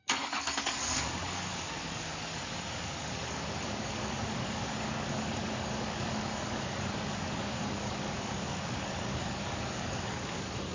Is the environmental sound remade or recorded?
remade